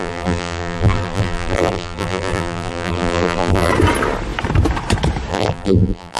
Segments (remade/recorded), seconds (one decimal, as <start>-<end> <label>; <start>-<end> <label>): 0.0-3.7 remade; 3.7-5.3 recorded; 5.3-6.2 remade